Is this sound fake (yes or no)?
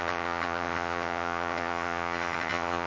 yes